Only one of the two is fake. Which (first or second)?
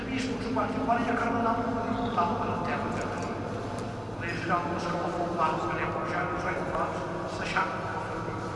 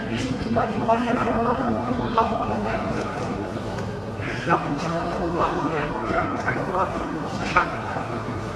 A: second